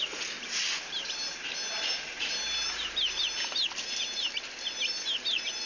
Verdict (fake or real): real